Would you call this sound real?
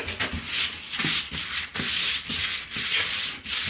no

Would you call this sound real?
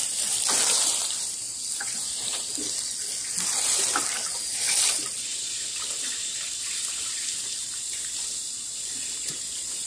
no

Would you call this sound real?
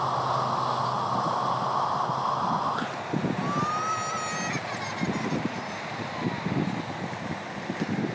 yes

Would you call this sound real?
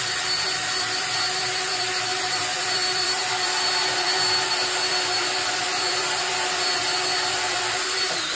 no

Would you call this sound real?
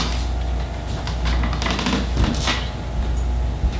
yes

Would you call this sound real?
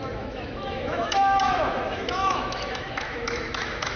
no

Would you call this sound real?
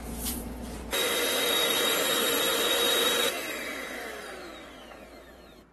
no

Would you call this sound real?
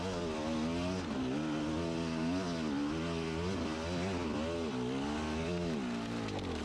yes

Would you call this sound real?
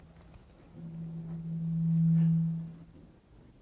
yes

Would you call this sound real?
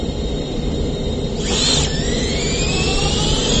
yes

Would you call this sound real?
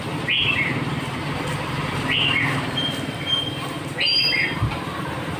yes